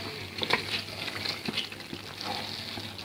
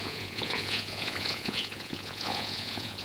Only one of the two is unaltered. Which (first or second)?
first